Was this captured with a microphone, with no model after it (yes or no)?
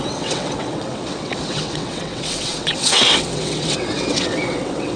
no